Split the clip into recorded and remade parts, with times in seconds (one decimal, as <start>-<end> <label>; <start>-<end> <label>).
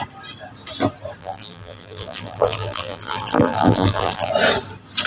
0.0-1.2 recorded; 1.2-4.3 remade; 4.3-5.1 recorded